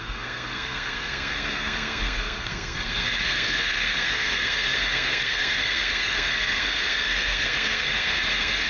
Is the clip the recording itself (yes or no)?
no